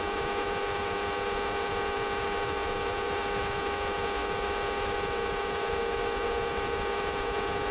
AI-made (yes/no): no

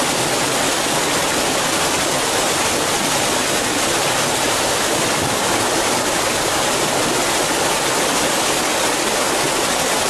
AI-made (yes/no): no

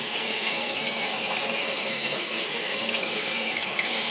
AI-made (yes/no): yes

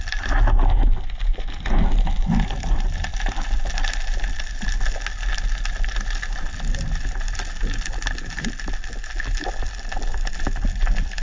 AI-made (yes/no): no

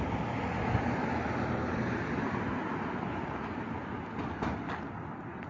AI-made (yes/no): no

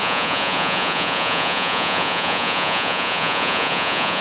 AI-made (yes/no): yes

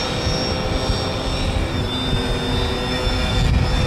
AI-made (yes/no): no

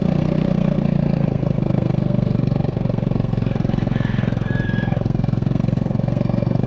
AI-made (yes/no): yes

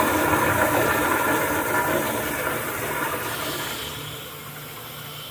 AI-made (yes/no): no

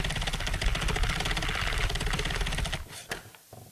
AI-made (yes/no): no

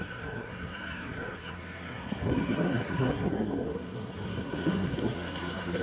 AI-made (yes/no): yes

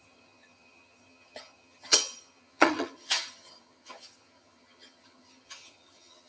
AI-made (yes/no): yes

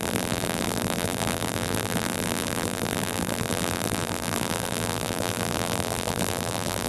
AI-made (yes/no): yes